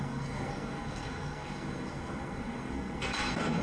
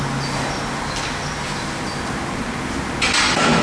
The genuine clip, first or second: second